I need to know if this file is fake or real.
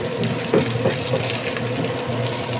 real